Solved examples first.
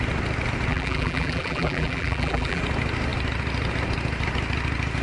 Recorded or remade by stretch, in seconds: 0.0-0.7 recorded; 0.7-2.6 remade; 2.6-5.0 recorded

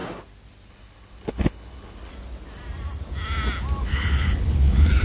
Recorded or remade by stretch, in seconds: 0.0-0.7 recorded; 0.7-2.1 remade; 2.1-3.8 recorded; 3.8-5.0 remade

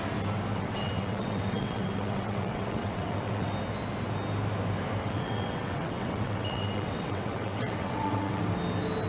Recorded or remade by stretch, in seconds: 0.0-0.5 recorded; 0.5-3.5 remade; 3.5-5.0 recorded; 5.0-8.4 remade; 8.4-9.1 recorded

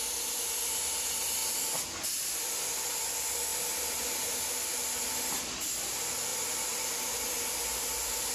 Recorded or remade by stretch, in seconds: 0.0-3.5 recorded; 3.5-5.3 remade; 5.3-6.3 recorded; 6.3-6.9 remade; 6.9-8.3 recorded